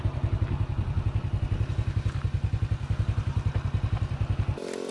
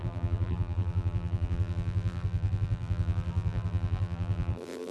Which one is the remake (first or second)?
second